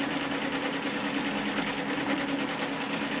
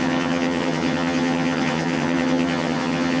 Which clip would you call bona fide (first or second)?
first